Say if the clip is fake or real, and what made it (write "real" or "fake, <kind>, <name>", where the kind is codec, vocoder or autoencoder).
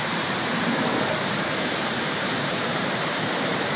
fake, vocoder, BigVGAN v2